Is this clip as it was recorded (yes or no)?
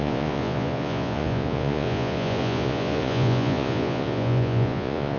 no